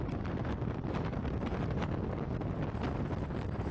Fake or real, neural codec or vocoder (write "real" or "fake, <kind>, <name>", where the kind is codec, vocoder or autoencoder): real